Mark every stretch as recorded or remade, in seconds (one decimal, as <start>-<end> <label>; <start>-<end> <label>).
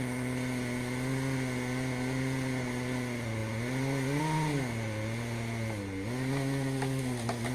0.0-7.5 recorded